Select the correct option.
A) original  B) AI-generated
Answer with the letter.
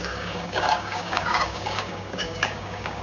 B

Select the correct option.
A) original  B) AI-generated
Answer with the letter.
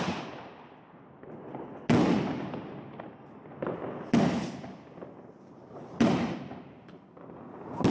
A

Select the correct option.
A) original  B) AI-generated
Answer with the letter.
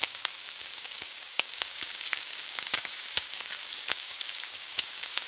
B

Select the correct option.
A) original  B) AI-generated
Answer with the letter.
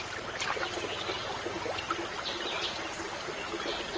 A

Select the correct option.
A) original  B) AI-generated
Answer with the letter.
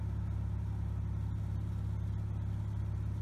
A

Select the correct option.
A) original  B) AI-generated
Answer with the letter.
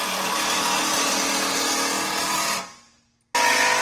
A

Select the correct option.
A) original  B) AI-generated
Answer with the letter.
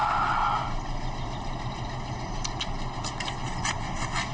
A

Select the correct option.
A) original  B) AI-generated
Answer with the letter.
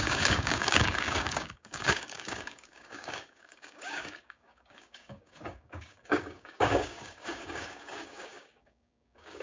B